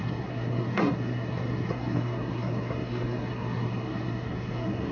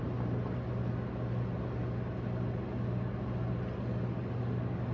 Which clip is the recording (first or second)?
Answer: second